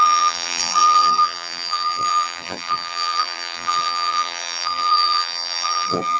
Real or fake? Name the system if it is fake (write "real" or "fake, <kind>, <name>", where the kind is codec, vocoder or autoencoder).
fake, vocoder, BigVGAN v2